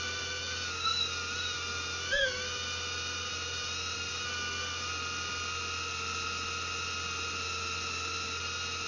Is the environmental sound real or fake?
real